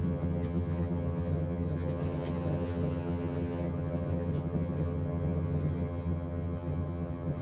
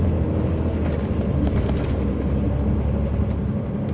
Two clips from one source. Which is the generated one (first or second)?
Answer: first